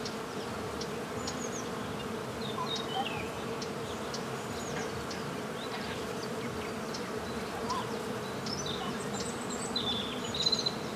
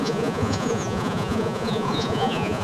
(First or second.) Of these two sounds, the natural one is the first